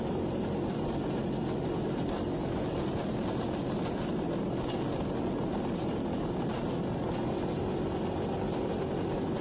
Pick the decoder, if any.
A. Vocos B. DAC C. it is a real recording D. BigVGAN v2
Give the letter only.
C